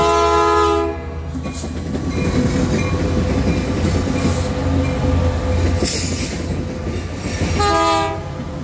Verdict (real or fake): real